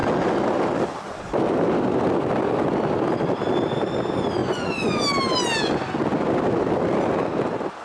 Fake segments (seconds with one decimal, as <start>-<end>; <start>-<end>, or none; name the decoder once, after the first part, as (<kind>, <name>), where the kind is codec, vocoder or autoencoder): 4.4-5.0 (vocoder, Vocos)

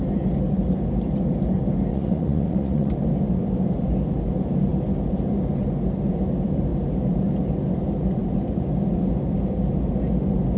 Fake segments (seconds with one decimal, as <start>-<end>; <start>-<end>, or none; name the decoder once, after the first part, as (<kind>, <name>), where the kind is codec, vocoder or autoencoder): 1.9-2.9 (vocoder, Vocos)

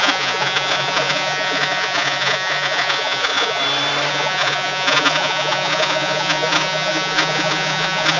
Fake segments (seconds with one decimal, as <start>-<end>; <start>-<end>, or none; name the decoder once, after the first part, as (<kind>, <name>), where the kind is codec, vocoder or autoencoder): 0.0-3.6 (vocoder, Vocos); 4.1-8.2

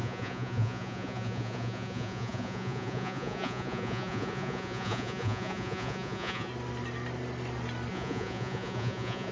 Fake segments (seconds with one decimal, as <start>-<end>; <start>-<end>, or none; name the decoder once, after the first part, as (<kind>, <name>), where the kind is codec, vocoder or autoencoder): 0.0-6.5 (vocoder, Vocos); 7.9-9.3

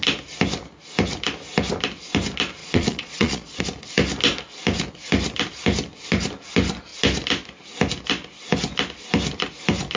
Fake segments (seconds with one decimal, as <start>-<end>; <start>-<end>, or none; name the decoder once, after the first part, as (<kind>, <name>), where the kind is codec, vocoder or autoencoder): 2.6-3.6 (vocoder, Vocos)

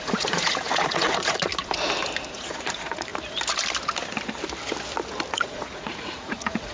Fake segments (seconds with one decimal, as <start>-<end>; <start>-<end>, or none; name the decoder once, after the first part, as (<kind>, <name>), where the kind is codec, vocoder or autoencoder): 0.0-1.5 (vocoder, Vocos); 2.3-3.1; 5.3-6.7

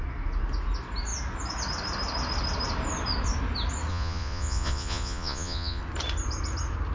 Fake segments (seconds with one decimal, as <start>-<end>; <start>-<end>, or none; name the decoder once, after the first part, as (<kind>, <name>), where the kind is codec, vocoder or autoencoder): 3.9-5.8 (vocoder, Vocos)

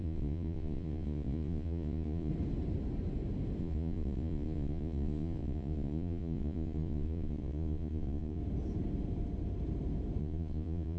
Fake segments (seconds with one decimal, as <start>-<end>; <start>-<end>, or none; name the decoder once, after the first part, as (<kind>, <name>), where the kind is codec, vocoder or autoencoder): 0.0-2.3 (vocoder, Vocos); 3.6-8.4; 10.2-11.0